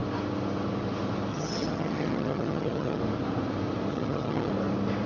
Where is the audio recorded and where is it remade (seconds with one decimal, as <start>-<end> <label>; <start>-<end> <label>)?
0.0-1.3 recorded; 1.3-3.0 remade; 3.0-3.9 recorded; 3.9-4.5 remade; 4.5-5.1 recorded

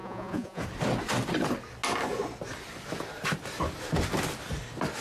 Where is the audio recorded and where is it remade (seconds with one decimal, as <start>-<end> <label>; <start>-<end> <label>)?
0.0-0.6 remade; 0.6-5.0 recorded

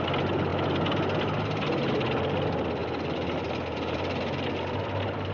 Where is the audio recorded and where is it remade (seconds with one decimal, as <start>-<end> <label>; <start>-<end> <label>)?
0.0-5.3 recorded

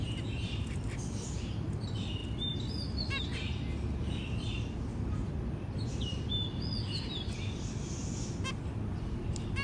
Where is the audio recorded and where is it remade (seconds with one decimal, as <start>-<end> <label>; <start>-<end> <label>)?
0.0-9.6 recorded